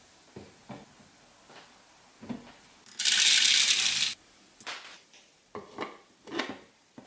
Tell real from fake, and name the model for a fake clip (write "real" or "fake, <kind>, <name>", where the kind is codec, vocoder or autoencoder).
real